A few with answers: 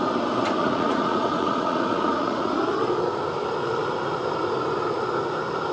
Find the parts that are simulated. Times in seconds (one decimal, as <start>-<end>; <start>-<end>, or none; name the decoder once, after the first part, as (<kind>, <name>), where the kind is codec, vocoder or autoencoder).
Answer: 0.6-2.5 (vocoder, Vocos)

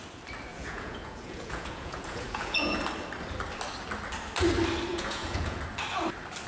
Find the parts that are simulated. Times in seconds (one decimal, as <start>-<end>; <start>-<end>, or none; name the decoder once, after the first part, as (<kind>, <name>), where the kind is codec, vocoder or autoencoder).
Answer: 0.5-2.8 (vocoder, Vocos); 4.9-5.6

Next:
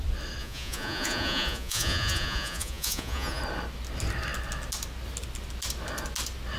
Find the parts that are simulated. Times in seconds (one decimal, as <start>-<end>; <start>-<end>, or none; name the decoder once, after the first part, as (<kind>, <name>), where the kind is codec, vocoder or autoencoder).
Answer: 0.4-3.4 (vocoder, Vocos)

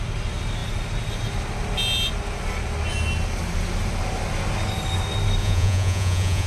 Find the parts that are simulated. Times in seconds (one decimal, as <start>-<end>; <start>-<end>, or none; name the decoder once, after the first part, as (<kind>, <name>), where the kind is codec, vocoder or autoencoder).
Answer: 5.4-6.5 (vocoder, Vocos)